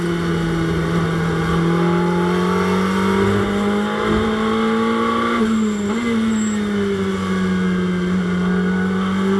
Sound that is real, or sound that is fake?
real